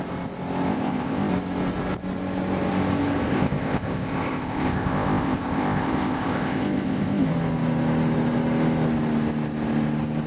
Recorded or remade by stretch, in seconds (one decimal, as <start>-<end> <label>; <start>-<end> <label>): 0.0-0.7 recorded; 0.7-1.3 remade; 1.3-3.3 recorded; 3.3-7.3 remade; 7.3-10.3 recorded